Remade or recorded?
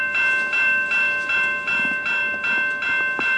recorded